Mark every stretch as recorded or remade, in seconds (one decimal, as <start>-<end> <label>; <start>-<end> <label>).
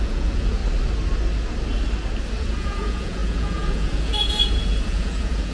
0.0-0.6 remade; 0.6-2.4 recorded; 2.4-5.5 remade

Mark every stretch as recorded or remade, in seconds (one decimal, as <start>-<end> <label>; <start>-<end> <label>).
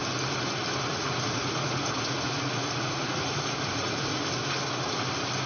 0.0-0.9 recorded; 0.9-4.2 remade; 4.2-5.5 recorded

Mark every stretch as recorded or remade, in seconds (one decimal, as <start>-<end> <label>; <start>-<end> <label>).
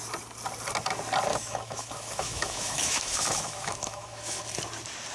0.0-1.3 recorded; 1.3-4.4 remade; 4.4-5.1 recorded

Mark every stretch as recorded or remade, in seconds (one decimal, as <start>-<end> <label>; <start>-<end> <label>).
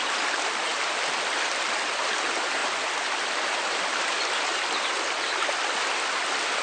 0.0-0.7 recorded; 0.7-1.7 remade; 1.7-2.6 recorded; 2.6-5.8 remade; 5.8-6.6 recorded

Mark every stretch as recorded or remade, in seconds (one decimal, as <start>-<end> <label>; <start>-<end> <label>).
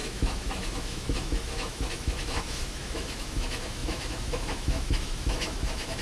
0.0-6.0 remade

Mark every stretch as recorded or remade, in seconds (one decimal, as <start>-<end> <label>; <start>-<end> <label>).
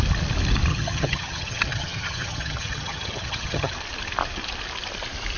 0.0-0.7 recorded; 0.7-3.7 remade; 3.7-5.4 recorded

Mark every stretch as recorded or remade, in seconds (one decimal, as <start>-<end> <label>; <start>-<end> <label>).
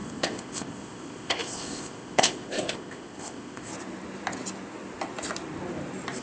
0.0-3.7 remade; 3.7-6.2 recorded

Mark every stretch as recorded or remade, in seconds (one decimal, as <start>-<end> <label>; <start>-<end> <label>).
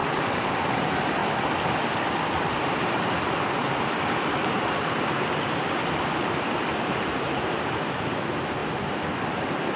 0.0-1.2 remade; 1.2-2.4 recorded; 2.4-3.6 remade; 3.6-4.4 recorded; 4.4-9.8 remade